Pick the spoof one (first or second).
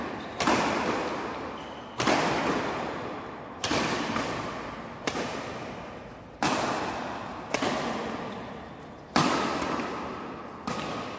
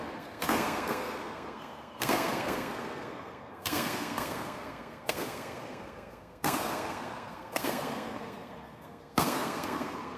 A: second